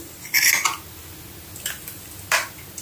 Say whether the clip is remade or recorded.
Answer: recorded